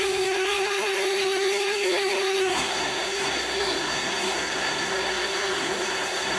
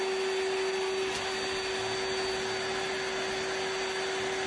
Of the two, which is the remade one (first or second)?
first